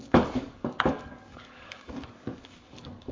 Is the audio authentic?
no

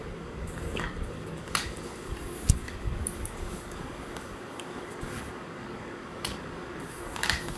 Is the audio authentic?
no